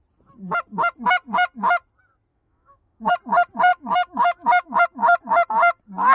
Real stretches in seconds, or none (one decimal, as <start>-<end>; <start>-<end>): 0.0-2.3; 3.1-3.7; 4.8-6.1